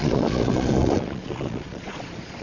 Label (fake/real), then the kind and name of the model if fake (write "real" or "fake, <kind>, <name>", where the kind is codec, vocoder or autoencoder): fake, vocoder, Vocos